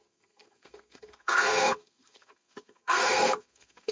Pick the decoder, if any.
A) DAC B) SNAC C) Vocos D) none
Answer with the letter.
B